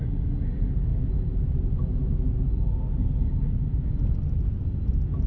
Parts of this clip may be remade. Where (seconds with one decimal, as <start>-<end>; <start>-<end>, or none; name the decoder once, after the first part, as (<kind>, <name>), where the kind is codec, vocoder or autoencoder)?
0.9-2.6 (vocoder, Vocos)